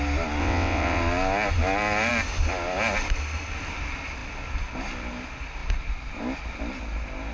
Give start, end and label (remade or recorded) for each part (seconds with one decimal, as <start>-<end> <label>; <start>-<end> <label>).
0.0-0.4 recorded; 0.4-1.0 remade; 1.0-7.3 recorded